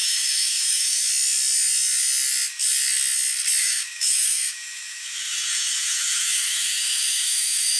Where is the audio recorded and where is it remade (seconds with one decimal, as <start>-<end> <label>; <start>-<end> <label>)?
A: 0.0-1.0 remade; 1.0-3.6 recorded; 3.6-7.8 remade